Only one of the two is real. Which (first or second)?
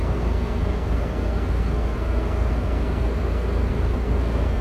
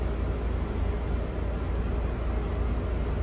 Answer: second